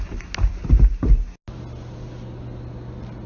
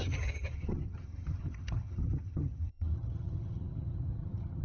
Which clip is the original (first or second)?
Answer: first